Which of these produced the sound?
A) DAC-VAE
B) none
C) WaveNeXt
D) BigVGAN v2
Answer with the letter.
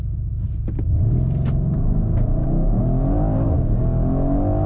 B